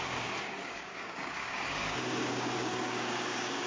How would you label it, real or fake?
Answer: fake